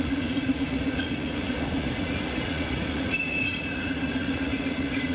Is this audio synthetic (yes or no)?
yes